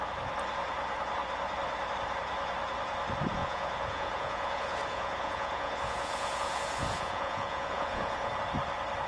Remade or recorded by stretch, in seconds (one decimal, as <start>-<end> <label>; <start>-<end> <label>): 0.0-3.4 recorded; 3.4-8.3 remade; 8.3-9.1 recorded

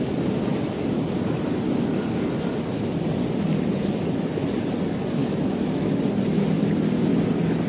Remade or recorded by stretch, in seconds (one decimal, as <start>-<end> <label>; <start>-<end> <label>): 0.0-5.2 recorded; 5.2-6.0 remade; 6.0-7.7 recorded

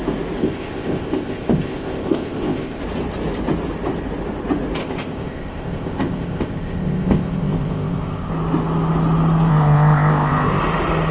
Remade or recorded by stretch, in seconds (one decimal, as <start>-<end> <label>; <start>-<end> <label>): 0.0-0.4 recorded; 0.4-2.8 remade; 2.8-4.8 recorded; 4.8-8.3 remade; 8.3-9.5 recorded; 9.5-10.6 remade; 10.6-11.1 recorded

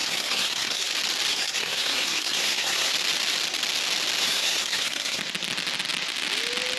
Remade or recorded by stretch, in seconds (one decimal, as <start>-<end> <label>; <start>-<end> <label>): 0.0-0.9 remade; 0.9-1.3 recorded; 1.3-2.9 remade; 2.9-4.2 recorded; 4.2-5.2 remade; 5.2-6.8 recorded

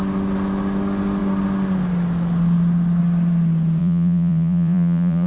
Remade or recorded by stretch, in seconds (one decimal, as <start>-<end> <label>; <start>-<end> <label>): 0.0-3.8 recorded; 3.8-5.3 remade

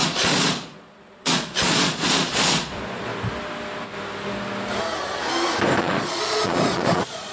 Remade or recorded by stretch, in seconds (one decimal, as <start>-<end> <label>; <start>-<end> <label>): 0.0-3.1 remade; 3.1-5.8 recorded; 5.8-7.3 remade

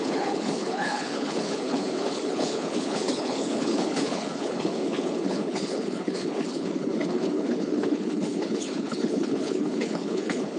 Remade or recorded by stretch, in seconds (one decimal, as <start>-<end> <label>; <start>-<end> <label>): 0.0-10.6 remade

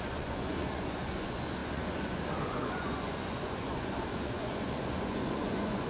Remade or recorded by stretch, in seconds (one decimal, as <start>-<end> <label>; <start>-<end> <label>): 0.0-5.9 remade